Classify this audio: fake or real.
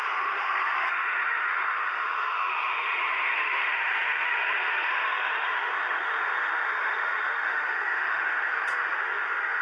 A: fake